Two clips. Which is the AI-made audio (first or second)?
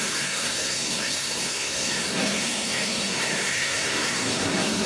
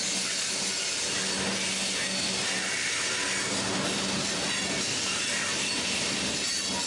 first